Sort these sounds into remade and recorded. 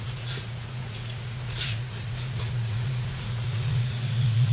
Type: remade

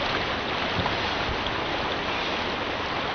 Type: recorded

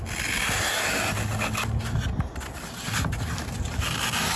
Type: recorded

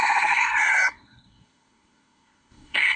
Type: remade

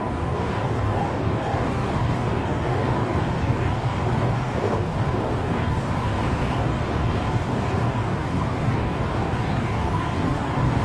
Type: remade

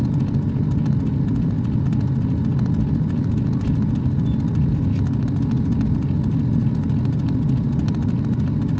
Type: recorded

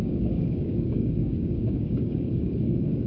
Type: remade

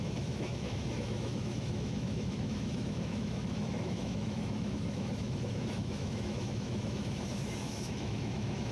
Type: remade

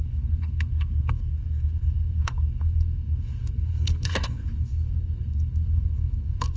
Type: remade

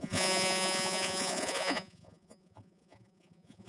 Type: remade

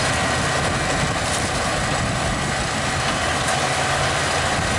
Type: recorded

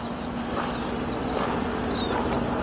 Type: recorded